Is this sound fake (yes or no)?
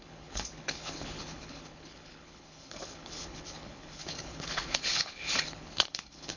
yes